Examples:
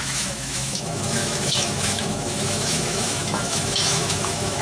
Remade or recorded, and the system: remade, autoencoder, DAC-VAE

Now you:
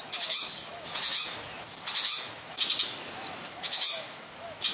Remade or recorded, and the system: remade, autoencoder, DAC-VAE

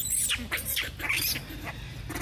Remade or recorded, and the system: recorded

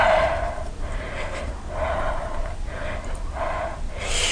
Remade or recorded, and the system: recorded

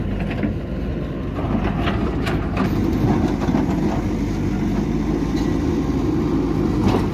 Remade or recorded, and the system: recorded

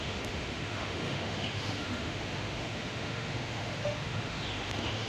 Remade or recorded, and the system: remade, autoencoder, DAC-VAE